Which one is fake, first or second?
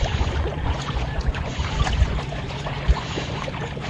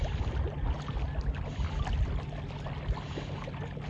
first